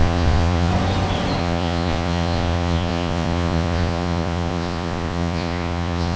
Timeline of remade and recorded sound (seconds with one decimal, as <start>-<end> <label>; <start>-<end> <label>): 0.0-0.7 remade; 0.7-1.4 recorded; 1.4-6.2 remade